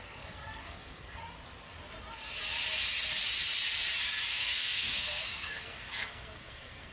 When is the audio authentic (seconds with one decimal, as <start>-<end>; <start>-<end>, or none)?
1.2-4.3